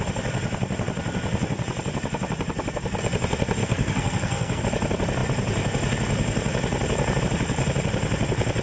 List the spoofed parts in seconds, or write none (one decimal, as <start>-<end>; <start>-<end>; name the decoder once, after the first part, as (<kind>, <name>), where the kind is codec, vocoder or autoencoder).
3.6-4.6 (codec, SNAC)